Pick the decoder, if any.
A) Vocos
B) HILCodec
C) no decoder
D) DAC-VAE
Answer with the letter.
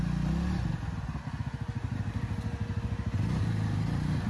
C